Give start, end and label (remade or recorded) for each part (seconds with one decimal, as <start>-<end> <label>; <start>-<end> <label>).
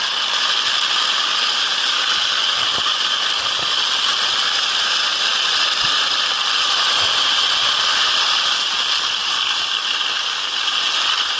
0.0-11.4 recorded